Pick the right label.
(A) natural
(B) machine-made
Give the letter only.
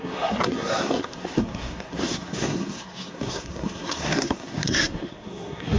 B